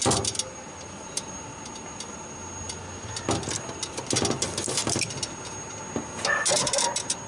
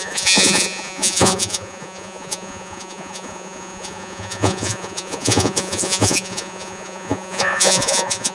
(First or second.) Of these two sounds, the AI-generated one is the second